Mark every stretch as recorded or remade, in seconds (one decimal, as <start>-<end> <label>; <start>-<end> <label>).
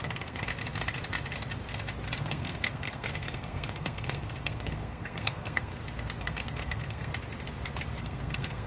0.0-0.5 remade; 0.5-2.2 recorded; 2.2-5.7 remade; 5.7-6.2 recorded; 6.2-7.1 remade; 7.1-8.0 recorded; 8.0-8.7 remade